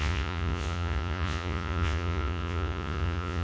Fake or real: fake